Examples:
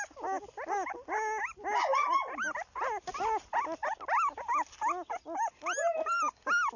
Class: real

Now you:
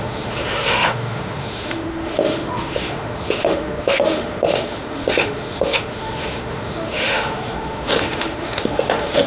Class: fake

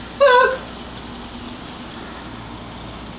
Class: real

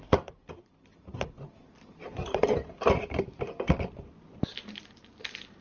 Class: real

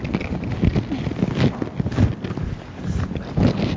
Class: real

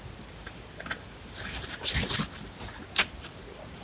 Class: real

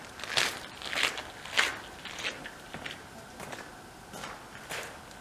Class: real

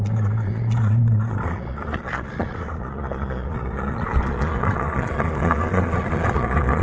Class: fake